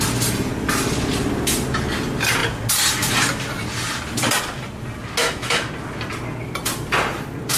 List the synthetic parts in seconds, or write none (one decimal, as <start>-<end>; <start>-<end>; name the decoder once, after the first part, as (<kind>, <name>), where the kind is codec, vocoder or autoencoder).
5.2-5.7 (autoencoder, DAC-VAE)